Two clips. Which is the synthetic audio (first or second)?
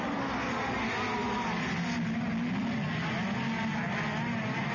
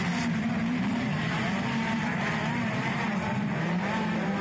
second